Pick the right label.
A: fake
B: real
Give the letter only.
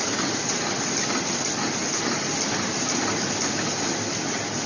B